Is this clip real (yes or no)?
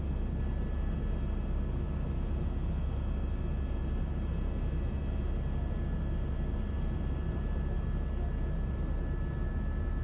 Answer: yes